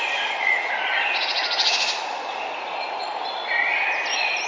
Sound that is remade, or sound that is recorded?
recorded